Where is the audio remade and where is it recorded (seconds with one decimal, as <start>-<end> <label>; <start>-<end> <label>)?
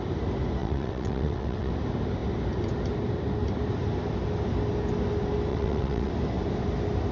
0.0-0.6 recorded; 0.6-1.7 remade; 1.7-5.5 recorded; 5.5-6.1 remade; 6.1-7.1 recorded